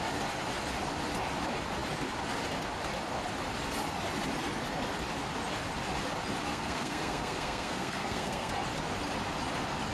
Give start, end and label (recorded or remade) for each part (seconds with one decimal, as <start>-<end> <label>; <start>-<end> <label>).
0.0-6.5 recorded; 6.5-8.5 remade; 8.5-9.9 recorded